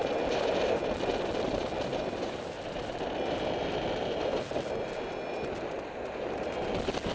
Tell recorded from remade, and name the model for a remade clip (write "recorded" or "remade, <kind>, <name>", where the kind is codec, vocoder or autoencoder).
recorded